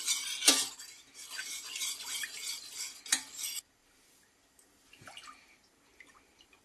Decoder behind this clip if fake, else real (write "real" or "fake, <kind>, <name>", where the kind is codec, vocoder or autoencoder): real